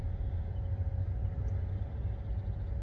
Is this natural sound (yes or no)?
yes